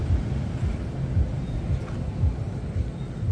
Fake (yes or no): no